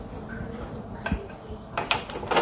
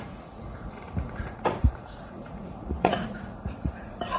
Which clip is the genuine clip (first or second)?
first